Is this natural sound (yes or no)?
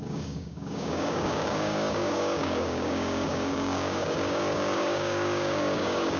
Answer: no